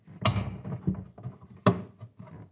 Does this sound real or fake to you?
real